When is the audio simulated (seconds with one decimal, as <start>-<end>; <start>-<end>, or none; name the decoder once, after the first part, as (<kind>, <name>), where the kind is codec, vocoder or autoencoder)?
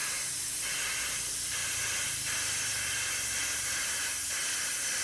0.5-1.6 (vocoder, BigVGAN v2); 4.6-5.0